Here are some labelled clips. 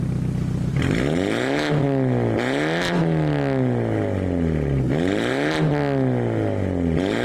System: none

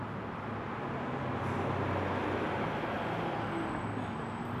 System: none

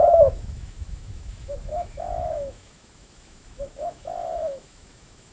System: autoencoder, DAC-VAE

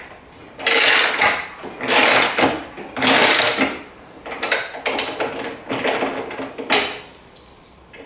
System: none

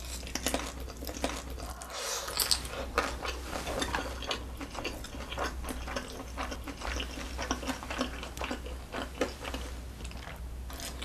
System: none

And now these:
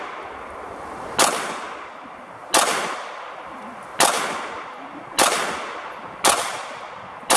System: none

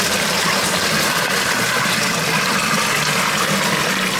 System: none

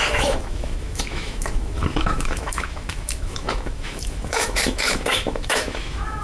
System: autoencoder, DAC-VAE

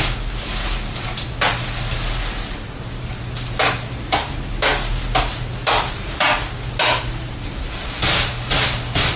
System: none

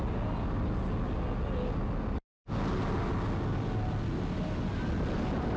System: none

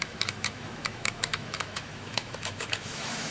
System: autoencoder, DAC-VAE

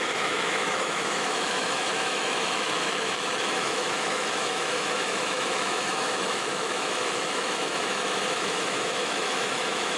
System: autoencoder, DAC-VAE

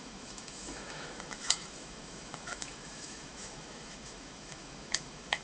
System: autoencoder, DAC-VAE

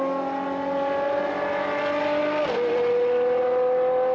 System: none